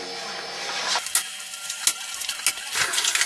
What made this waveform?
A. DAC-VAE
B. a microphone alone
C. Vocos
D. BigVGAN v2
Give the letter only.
B